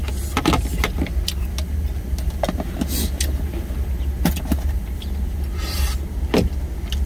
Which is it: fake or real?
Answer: real